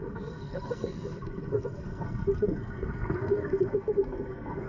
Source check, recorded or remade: remade